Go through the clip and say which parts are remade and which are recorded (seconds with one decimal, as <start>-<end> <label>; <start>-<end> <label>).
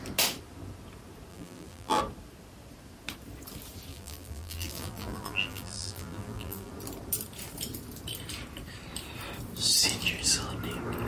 0.0-1.3 recorded; 1.3-2.0 remade; 2.0-3.9 recorded; 3.9-6.7 remade; 6.7-11.1 recorded